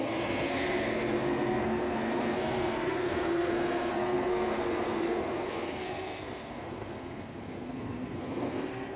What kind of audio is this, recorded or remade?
remade